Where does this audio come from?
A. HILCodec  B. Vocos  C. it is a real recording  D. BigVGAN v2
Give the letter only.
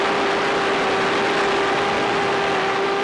C